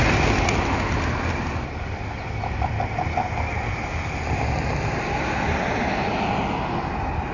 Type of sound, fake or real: real